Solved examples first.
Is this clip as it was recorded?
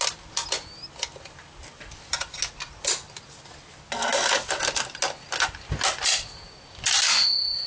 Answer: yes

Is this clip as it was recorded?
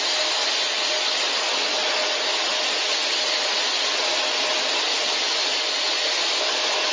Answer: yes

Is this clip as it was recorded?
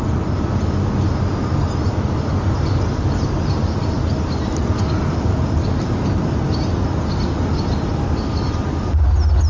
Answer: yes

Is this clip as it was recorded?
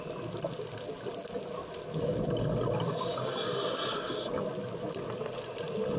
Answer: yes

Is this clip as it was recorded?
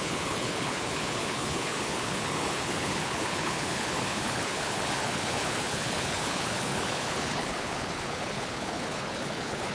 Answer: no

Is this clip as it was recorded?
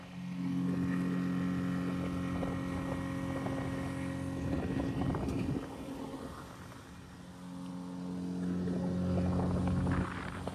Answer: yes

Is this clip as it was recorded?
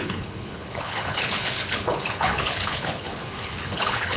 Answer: no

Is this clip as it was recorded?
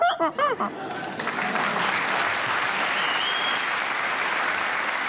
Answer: yes